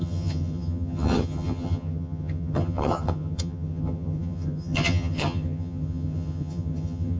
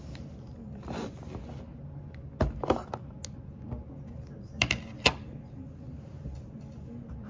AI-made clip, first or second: first